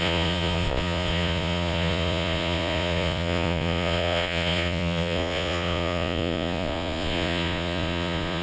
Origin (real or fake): fake